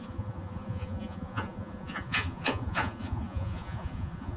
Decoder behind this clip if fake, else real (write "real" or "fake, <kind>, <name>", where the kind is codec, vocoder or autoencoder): fake, vocoder, Vocos